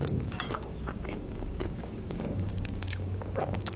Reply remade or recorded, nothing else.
remade